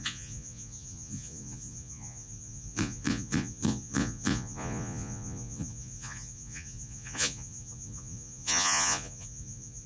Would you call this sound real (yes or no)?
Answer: no